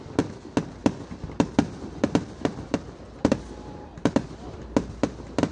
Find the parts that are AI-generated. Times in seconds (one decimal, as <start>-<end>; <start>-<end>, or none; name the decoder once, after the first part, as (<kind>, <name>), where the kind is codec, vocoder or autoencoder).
0.8-4.1 (vocoder, BigVGAN v2)